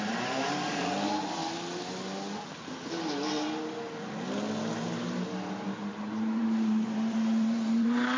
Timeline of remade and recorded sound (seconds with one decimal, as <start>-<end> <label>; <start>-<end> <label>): 0.0-1.4 remade; 1.4-5.9 recorded; 5.9-8.2 remade